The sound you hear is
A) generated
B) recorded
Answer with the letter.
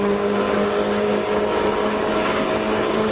A